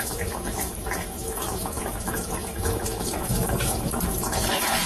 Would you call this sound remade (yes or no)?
yes